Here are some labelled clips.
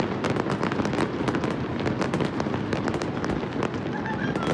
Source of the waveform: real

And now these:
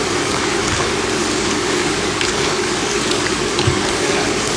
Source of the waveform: fake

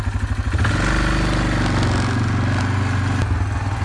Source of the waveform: real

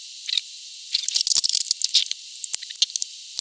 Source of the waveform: real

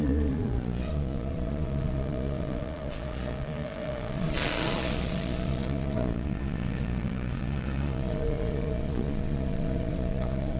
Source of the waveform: fake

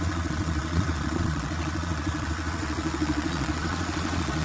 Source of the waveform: fake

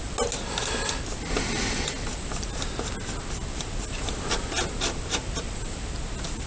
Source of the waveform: real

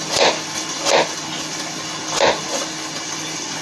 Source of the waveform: real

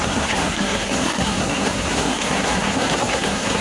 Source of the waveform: fake